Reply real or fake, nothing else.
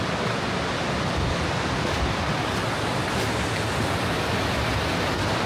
real